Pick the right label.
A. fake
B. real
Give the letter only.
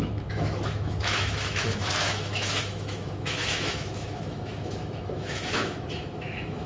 A